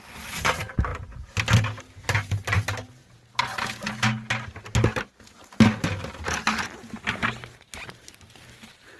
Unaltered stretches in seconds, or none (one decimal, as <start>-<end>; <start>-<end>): 0.0-9.0